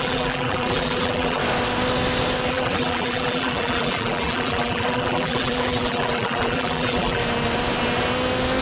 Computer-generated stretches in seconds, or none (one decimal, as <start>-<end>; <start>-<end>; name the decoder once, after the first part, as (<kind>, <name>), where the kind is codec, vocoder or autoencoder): 0.0-1.4 (vocoder, BigVGAN v2); 2.5-7.2